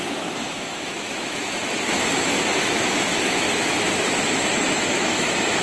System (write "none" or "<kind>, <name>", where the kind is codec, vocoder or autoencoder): autoencoder, DAC-VAE